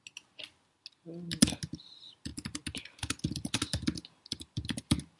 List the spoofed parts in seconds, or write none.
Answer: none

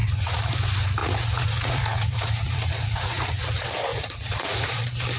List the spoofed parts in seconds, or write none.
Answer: 0.0-0.5 (vocoder, Vocos); 1.0-3.5; 3.9-4.8

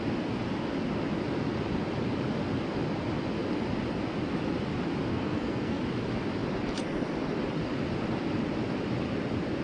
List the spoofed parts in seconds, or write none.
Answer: 5.1-5.8 (codec, SNAC)

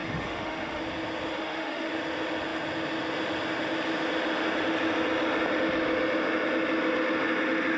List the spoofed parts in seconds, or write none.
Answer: 0.0-0.8 (autoencoder, DAC-VAE); 1.3-1.9

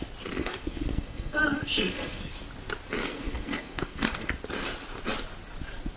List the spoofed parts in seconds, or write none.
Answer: 0.4-2.3 (codec, SNAC); 3.0-4.3

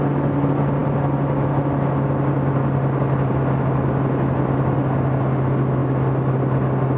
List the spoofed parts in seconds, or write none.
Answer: none